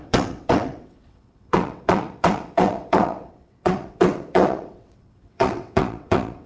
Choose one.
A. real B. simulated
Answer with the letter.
B